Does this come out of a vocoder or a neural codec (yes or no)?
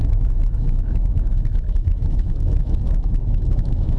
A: yes